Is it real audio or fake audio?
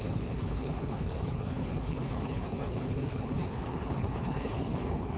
fake